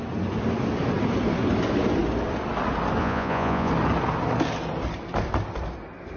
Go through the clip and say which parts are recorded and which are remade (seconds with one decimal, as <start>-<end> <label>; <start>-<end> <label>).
0.0-3.0 recorded; 3.0-3.7 remade; 3.7-6.2 recorded